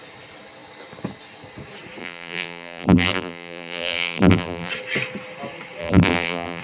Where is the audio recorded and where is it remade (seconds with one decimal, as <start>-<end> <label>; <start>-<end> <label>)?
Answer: 0.0-2.0 recorded; 2.0-4.7 remade; 4.7-5.8 recorded; 5.8-6.6 remade